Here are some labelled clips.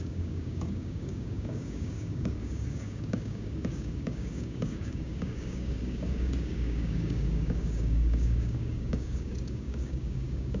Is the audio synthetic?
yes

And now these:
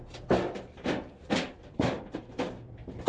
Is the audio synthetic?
yes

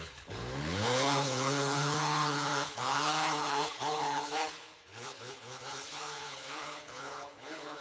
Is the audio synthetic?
yes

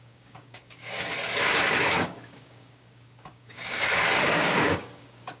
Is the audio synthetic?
yes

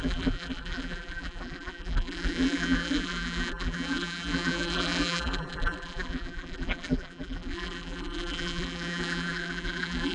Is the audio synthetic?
yes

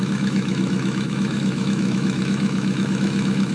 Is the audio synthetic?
yes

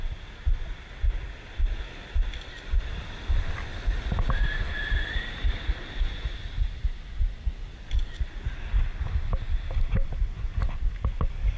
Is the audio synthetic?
no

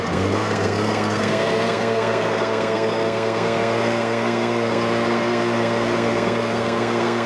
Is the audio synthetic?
yes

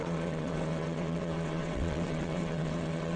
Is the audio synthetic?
yes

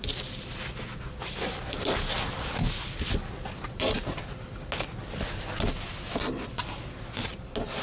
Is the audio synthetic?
no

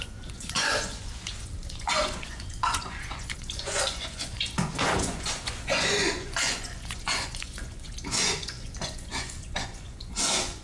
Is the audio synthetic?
yes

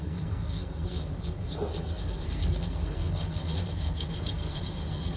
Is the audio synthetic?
yes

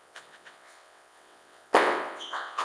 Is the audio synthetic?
yes